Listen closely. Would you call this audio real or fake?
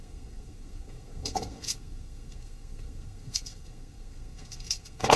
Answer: fake